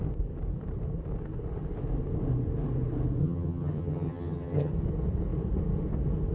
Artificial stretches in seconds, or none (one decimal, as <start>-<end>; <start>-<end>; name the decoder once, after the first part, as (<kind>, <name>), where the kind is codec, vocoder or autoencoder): 3.2-4.7 (vocoder, HiFi-GAN)